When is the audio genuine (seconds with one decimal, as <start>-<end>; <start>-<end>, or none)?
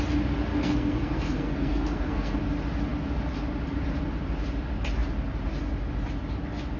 0.0-0.5; 2.4-6.8